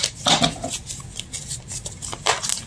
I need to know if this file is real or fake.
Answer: real